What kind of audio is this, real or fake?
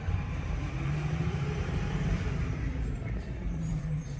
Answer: fake